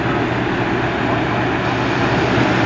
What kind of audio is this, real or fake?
real